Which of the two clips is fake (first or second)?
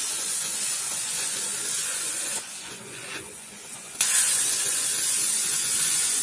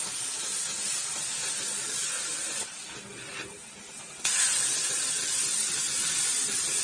first